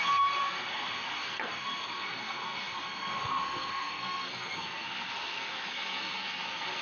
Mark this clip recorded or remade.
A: remade